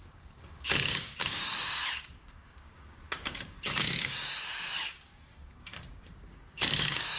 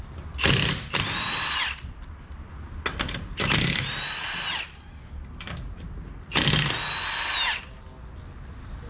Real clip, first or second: second